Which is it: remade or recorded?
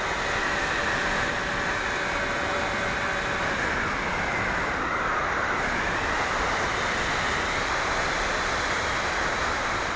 recorded